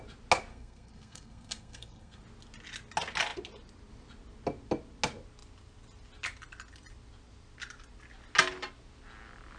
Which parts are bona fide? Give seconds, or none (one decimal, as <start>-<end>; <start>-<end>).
0.0-0.5; 2.2-9.6